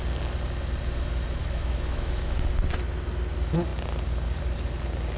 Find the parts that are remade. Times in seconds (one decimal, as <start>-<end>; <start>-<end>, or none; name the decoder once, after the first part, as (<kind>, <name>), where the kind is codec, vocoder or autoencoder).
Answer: 1.4-2.4 (autoencoder, DAC-VAE)